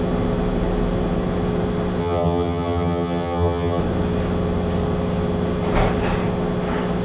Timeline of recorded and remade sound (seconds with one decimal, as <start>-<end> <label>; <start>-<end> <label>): 0.0-2.0 recorded; 2.0-3.8 remade; 3.8-7.0 recorded